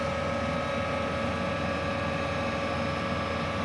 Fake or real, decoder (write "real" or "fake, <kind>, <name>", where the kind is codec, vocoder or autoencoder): real